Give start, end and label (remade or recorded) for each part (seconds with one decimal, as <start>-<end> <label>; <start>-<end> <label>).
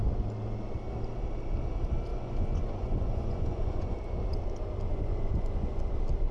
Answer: 0.0-2.1 recorded; 2.1-3.9 remade; 3.9-4.9 recorded; 4.9-5.8 remade; 5.8-6.3 recorded